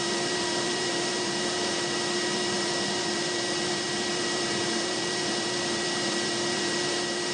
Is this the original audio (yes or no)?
no